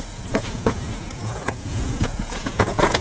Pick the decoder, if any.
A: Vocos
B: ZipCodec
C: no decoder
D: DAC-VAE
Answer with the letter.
A